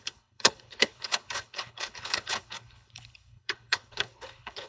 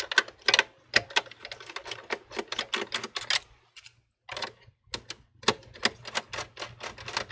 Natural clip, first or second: second